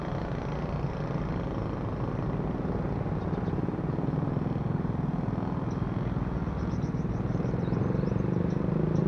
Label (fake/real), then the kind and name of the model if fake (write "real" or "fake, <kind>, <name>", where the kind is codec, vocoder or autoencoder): real